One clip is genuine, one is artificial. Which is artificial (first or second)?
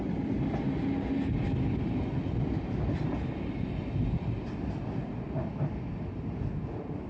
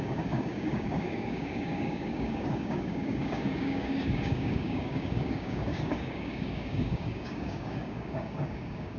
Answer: second